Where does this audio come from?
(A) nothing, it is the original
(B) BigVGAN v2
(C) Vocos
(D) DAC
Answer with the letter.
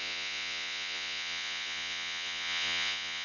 C